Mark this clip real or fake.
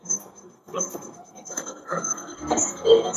fake